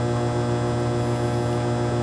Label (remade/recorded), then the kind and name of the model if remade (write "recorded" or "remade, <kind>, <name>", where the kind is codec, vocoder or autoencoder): recorded